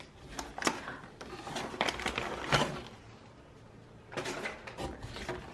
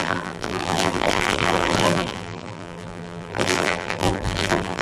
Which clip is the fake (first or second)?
second